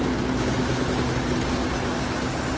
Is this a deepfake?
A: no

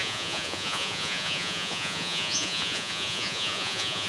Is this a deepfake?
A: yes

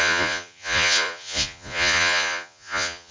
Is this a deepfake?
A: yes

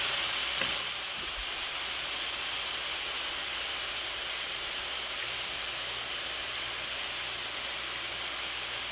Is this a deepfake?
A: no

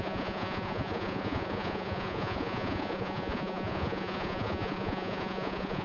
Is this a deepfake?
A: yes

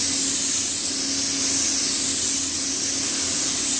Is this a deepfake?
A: no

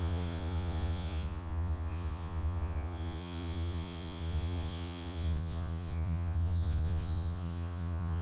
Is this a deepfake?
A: yes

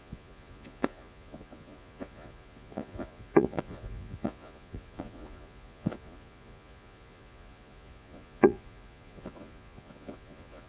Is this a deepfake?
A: yes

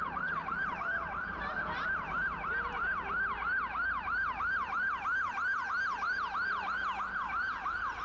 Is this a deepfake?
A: no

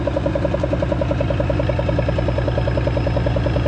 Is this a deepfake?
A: no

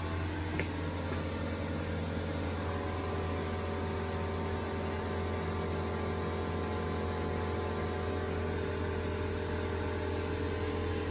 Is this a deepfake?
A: no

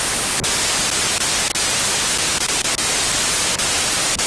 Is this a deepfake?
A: no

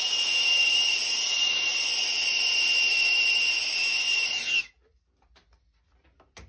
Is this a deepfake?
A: no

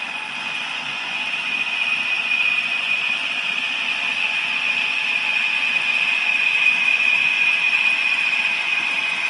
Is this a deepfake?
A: yes